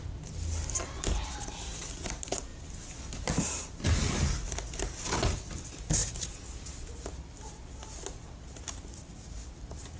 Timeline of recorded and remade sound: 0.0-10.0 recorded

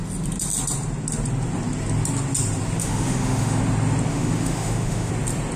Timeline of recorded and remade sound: 0.0-2.8 recorded; 2.8-3.6 remade; 3.6-4.1 recorded; 4.1-5.1 remade; 5.1-5.6 recorded